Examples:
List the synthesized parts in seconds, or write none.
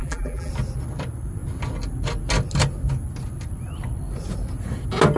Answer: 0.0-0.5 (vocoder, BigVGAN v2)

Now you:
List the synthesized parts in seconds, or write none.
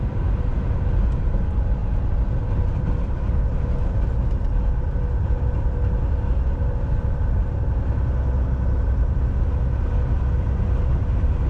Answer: none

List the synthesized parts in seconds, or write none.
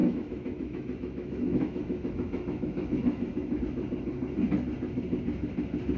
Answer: 0.0-3.6 (autoencoder, DAC-VAE)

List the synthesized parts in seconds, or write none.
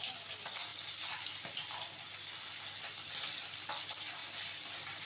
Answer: none